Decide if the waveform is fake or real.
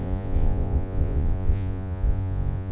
fake